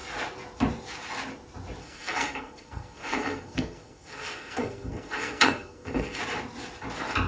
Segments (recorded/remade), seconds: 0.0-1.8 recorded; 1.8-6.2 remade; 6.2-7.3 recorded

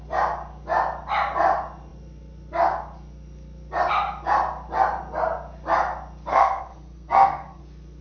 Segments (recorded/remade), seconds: 0.0-6.3 recorded; 6.3-7.6 remade; 7.6-8.0 recorded

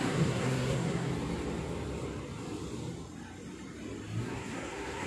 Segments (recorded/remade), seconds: 0.0-1.1 remade; 1.1-4.2 recorded; 4.2-5.1 remade

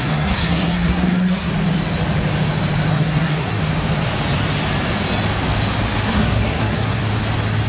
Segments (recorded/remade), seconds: 0.0-1.5 remade; 1.5-2.9 recorded; 2.9-3.6 remade; 3.6-6.0 recorded; 6.0-7.0 remade; 7.0-7.7 recorded

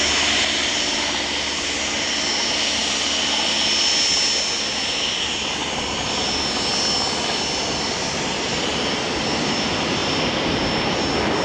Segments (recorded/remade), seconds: 0.0-11.4 recorded

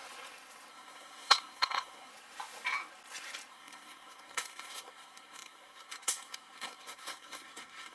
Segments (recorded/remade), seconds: 0.0-0.7 recorded; 0.7-2.1 remade; 2.1-3.5 recorded; 3.5-7.9 remade